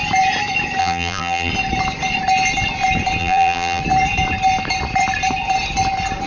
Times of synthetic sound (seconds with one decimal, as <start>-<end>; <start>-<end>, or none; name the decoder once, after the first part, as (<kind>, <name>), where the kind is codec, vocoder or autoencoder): 0.8-1.5 (vocoder, BigVGAN v2); 3.2-3.8